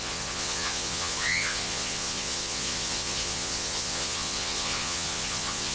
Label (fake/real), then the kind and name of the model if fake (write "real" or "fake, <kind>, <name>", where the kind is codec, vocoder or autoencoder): fake, vocoder, Vocos